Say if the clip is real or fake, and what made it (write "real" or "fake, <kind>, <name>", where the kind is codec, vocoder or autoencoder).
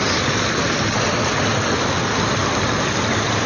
real